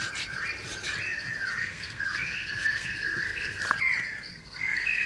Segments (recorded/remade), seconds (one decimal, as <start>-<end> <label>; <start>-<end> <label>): 0.0-1.6 recorded; 1.6-3.6 remade; 3.6-4.3 recorded; 4.3-5.1 remade